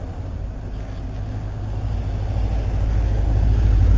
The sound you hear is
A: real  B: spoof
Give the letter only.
A